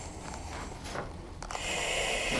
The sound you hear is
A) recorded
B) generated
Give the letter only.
A